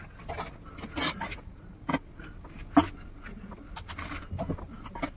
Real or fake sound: real